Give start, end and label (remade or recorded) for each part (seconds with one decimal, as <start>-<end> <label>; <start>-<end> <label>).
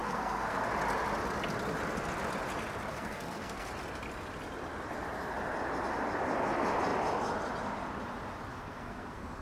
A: 0.0-0.7 remade; 0.7-2.9 recorded; 2.9-3.7 remade; 3.7-8.5 recorded; 8.5-9.4 remade